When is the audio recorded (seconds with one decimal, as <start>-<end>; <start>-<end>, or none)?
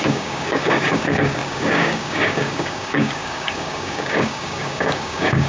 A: none